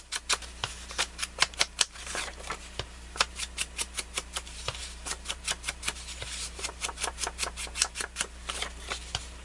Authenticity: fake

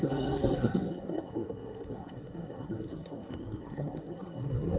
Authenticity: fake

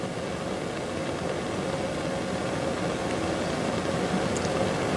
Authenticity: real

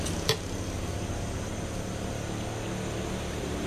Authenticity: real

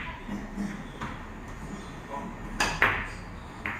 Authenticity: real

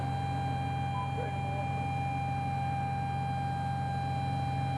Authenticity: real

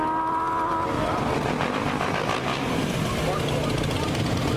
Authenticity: real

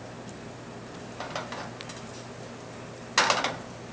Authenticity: real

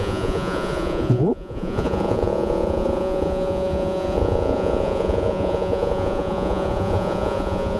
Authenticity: fake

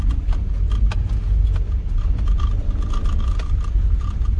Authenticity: real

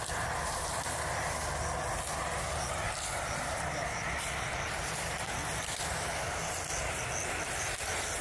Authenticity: real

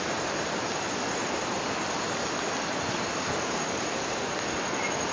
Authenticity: real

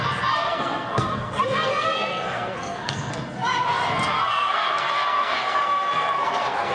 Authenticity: fake